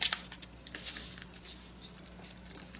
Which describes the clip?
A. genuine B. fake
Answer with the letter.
A